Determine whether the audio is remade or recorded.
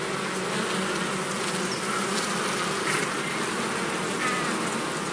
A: recorded